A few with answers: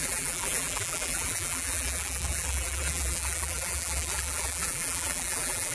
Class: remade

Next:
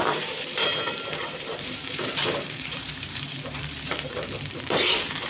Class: remade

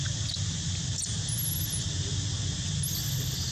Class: recorded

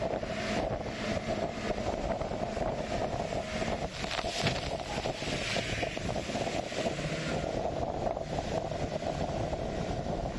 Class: recorded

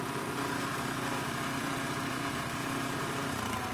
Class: remade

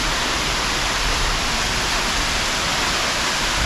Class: recorded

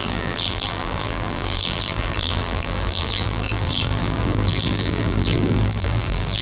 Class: remade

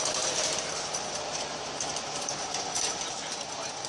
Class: remade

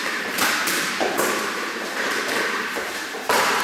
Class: remade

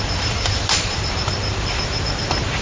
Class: remade